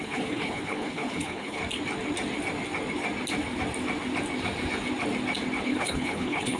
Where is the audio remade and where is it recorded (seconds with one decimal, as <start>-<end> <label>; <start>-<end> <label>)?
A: 0.0-1.6 remade; 1.6-5.6 recorded; 5.6-6.6 remade